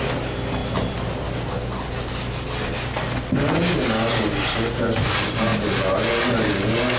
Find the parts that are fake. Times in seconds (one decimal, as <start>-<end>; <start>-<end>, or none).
none

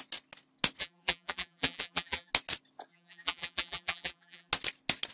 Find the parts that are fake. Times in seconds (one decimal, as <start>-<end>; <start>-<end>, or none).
0.8-2.3; 2.9-4.5

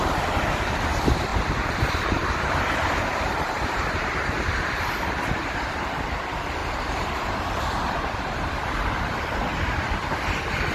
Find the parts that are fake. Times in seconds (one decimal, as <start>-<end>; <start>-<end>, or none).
1.3-4.4; 6.6-8.5

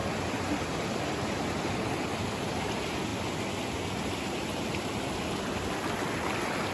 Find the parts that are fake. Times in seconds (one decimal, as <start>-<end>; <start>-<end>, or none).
none